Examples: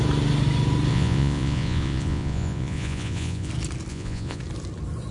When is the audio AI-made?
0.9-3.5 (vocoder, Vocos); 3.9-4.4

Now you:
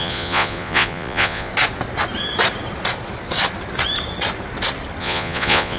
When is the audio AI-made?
0.0-1.5 (vocoder, Vocos); 5.0-5.8

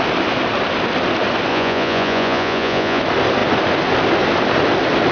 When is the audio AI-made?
1.5-3.0 (vocoder, Vocos)

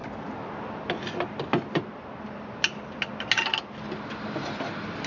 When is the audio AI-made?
none

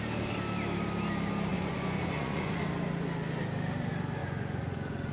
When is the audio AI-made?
1.5-2.6 (vocoder, Vocos); 4.2-5.1